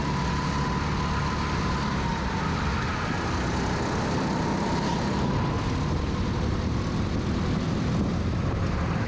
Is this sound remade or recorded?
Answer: recorded